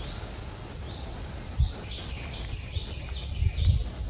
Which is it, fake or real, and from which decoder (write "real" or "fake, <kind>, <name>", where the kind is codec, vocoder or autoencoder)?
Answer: real